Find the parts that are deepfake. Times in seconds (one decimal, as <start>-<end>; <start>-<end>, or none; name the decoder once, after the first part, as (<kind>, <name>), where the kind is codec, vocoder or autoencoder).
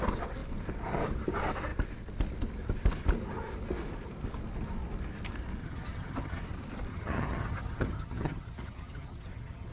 5.6-6.4 (vocoder, HiFi-GAN); 6.9-9.7